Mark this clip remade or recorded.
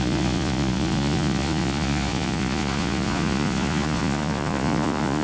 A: remade